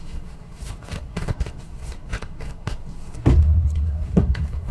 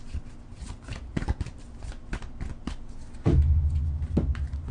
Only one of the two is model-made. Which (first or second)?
first